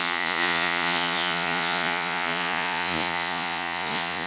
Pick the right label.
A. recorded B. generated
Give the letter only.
B